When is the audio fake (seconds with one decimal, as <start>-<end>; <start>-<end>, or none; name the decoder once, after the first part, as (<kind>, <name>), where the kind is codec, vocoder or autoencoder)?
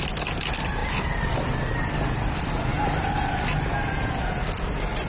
0.8-1.9 (vocoder, BigVGAN v2); 2.7-4.2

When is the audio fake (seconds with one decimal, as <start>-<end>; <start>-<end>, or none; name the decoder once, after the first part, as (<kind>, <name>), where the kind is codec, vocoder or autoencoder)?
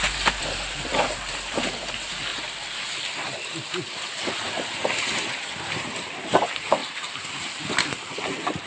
0.0-2.3 (vocoder, BigVGAN v2); 3.7-4.8; 6.2-6.8; 7.3-8.7